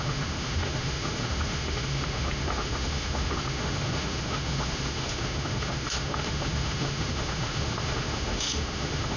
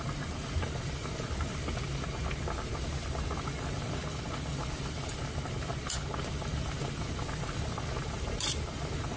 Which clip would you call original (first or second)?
second